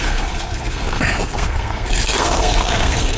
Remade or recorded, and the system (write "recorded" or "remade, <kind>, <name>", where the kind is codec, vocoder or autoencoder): remade, codec, SNAC